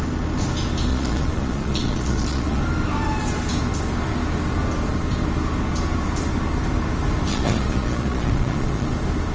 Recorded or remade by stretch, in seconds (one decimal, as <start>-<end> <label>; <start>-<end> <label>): 0.0-0.9 recorded; 0.9-2.6 remade; 2.6-7.3 recorded; 7.3-8.9 remade; 8.9-9.3 recorded